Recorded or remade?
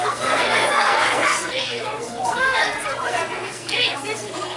remade